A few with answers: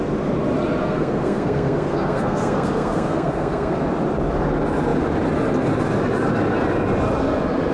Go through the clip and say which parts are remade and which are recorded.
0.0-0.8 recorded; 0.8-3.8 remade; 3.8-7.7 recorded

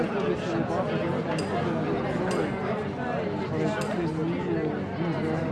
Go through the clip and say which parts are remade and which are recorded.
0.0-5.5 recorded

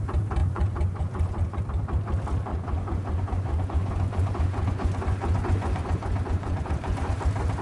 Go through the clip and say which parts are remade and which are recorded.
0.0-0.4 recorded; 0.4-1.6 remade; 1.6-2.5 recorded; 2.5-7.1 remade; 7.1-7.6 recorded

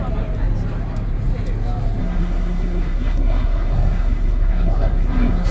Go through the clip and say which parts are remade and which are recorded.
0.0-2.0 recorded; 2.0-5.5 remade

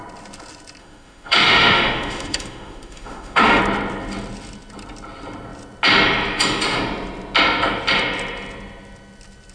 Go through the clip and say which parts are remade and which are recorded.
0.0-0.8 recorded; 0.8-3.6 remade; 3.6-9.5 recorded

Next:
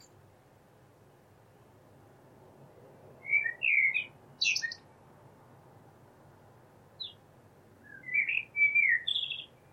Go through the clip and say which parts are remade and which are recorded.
0.0-9.7 recorded